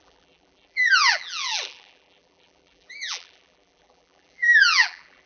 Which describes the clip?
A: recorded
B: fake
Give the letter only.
B